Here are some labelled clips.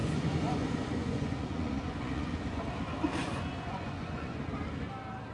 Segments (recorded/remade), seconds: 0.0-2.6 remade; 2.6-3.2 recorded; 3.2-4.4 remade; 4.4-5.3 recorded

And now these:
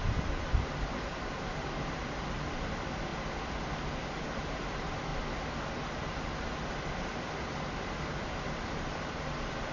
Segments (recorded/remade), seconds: 0.0-5.1 remade; 5.1-7.3 recorded; 7.3-9.7 remade

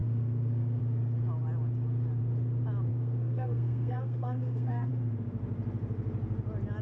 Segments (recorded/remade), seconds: 0.0-0.8 remade; 0.8-2.9 recorded; 2.9-4.9 remade; 4.9-6.8 recorded

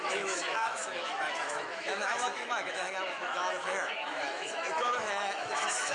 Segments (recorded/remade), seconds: 0.0-5.9 remade

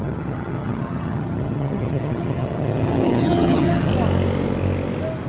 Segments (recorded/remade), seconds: 0.0-3.9 remade; 3.9-5.3 recorded

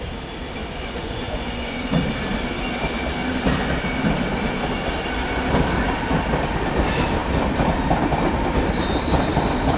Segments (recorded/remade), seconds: 0.0-0.6 recorded; 0.6-1.9 remade; 1.9-9.8 recorded